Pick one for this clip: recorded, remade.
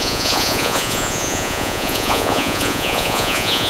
remade